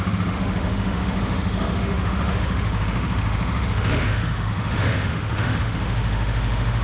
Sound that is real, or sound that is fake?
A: fake